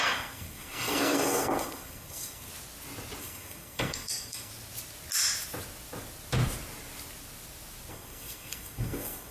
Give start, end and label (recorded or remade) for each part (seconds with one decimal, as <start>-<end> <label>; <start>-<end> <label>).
0.0-2.5 remade; 2.5-3.2 recorded; 3.2-4.5 remade; 4.5-7.9 recorded; 7.9-9.3 remade